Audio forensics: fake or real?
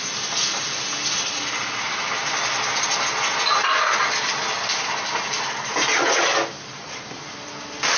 real